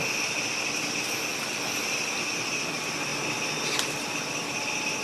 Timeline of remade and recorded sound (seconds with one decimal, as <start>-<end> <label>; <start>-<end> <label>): 0.0-5.0 recorded

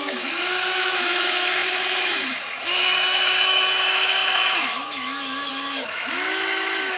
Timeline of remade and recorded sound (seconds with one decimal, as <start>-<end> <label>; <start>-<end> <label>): 0.0-7.0 remade

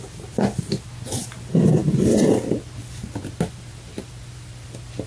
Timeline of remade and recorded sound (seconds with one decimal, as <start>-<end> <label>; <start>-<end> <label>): 0.0-5.1 recorded